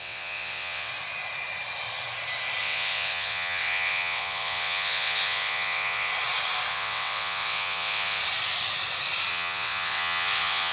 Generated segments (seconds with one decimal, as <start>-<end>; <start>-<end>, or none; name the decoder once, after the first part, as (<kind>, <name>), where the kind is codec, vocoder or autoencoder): 0.0-0.9 (vocoder, WaveNeXt); 2.6-6.1; 6.7-8.2; 9.3-10.7